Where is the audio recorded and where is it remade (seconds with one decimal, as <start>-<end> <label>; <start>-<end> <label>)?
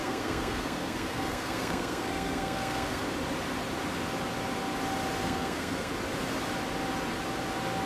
0.0-3.0 remade; 3.0-5.2 recorded; 5.2-5.9 remade; 5.9-7.9 recorded